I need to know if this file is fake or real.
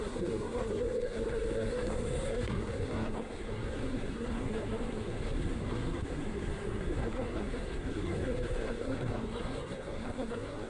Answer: fake